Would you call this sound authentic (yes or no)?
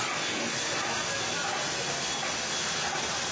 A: yes